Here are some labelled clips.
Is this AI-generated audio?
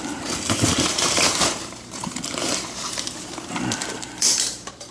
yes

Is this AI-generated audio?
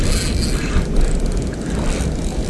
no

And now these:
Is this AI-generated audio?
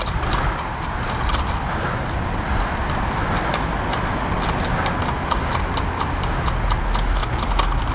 no